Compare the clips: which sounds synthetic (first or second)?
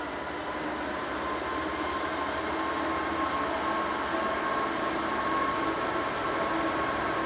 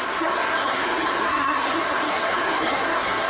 second